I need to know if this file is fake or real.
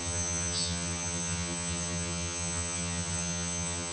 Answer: fake